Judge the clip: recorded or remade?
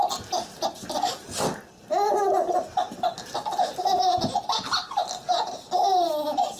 recorded